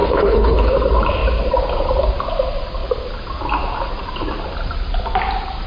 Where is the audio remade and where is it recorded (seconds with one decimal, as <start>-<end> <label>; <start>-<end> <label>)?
0.0-0.7 remade; 0.7-5.7 recorded